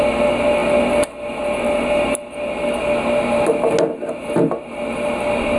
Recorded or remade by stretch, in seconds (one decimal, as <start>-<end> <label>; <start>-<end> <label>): 0.0-5.6 recorded